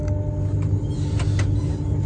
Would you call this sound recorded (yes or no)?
yes